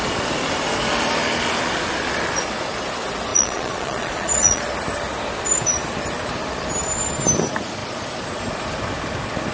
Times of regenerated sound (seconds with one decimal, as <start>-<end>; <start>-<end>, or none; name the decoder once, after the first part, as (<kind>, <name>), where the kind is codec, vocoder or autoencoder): 3.3-4.6 (vocoder, Vocos)